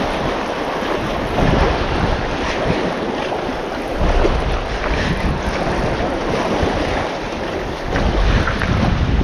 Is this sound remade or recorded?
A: recorded